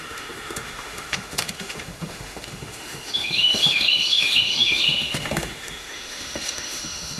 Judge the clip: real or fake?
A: fake